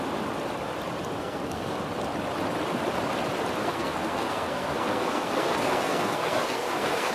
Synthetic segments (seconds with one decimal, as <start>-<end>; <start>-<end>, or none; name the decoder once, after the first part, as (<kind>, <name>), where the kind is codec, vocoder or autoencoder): 1.2-1.8 (codec, SNAC); 3.6-7.1